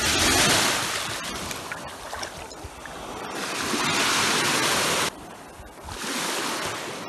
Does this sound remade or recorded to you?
recorded